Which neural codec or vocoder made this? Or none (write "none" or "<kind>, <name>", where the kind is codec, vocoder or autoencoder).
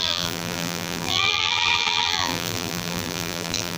vocoder, BigVGAN v2